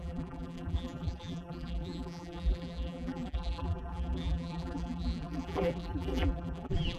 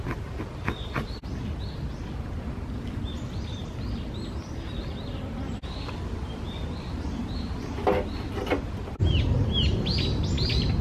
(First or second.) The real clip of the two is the second